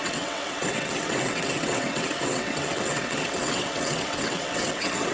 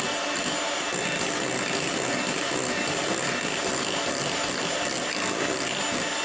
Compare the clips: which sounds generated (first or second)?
first